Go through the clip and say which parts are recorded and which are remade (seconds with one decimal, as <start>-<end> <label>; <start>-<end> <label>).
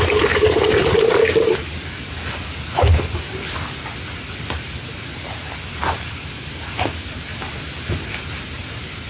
0.0-9.1 recorded